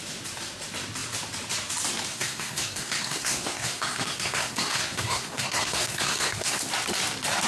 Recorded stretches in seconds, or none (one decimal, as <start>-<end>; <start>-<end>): 0.0-2.1; 6.6-7.5